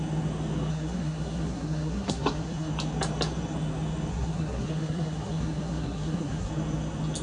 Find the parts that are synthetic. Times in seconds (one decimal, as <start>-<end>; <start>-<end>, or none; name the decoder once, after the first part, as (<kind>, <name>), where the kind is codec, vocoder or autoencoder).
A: 0.7-2.7 (codec, SNAC); 4.1-6.5